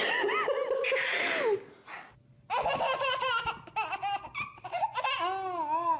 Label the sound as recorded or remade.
recorded